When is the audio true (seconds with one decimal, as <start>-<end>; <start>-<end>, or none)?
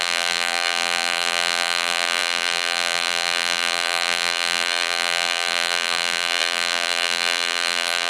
none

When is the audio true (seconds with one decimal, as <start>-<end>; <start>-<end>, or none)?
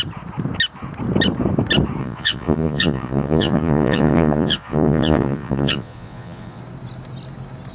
0.0-2.0; 6.6-7.7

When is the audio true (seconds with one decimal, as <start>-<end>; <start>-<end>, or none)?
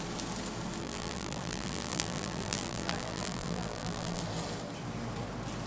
0.0-0.8; 4.2-5.7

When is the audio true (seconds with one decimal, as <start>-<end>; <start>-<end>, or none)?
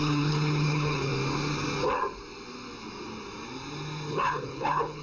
1.1-4.1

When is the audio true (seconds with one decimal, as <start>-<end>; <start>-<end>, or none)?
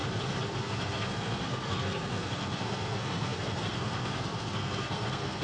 0.0-0.6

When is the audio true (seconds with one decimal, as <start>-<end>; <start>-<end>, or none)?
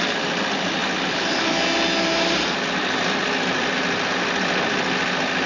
0.0-5.5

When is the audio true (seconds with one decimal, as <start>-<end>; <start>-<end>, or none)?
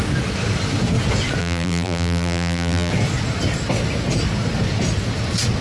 0.0-1.4; 2.9-5.6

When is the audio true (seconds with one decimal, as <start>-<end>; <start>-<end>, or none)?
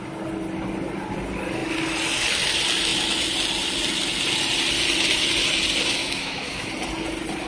0.0-6.0; 6.7-7.5